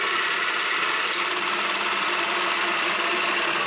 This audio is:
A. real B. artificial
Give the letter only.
B